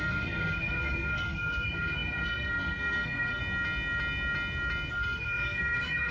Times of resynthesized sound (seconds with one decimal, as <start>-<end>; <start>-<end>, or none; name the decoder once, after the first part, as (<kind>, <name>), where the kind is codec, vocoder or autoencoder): 0.0-3.4 (codec, SNAC); 4.9-6.1